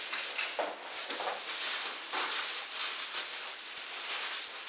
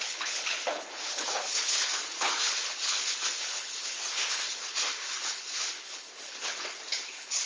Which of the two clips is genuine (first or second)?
first